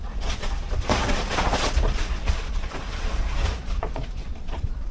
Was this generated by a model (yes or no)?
yes